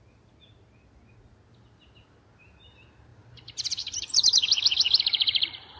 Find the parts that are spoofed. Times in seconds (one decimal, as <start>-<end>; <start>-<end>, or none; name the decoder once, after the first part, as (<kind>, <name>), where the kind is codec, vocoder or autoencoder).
3.1-5.8 (vocoder, BigVGAN v2)